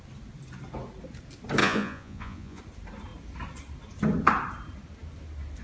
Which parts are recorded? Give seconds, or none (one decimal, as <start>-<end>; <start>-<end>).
0.0-1.6; 2.6-5.6